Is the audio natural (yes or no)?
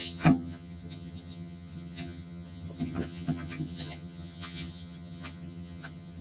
no